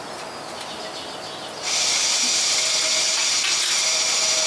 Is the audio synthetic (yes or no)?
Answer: no